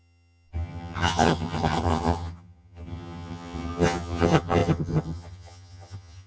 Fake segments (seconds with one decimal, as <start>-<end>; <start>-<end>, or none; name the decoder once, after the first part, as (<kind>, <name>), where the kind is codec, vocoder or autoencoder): 0.0-6.3 (vocoder, HiFi-GAN)